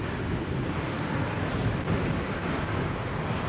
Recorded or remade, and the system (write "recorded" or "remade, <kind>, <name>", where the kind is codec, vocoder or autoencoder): recorded